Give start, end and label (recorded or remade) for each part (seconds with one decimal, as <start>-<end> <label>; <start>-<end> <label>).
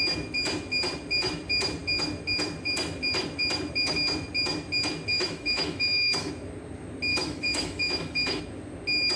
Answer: 0.0-5.1 recorded; 5.1-6.3 remade; 6.3-7.1 recorded; 7.1-8.4 remade; 8.4-9.2 recorded